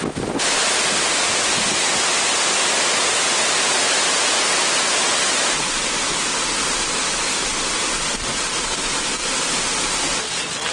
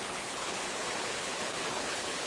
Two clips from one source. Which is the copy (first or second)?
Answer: second